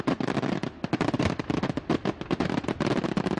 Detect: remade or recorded recorded